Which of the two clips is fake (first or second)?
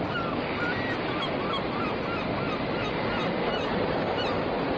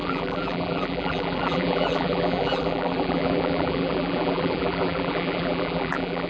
second